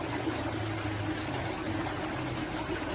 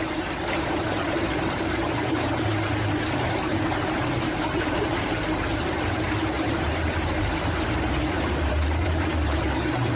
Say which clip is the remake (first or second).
second